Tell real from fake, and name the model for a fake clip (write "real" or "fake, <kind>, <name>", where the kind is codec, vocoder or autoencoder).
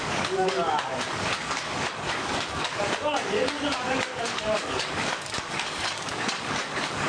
fake, codec, DAC